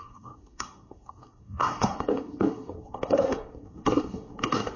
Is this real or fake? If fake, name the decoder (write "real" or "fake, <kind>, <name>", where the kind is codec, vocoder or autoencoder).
fake, codec, SNAC